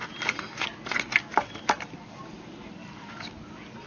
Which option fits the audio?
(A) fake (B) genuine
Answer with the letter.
B